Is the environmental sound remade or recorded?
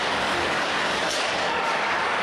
remade